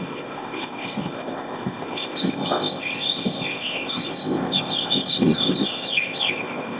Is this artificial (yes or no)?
yes